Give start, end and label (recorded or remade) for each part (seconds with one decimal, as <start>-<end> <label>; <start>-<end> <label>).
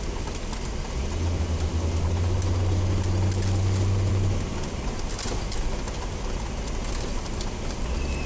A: 0.0-8.3 recorded